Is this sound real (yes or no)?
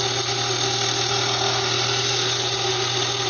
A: yes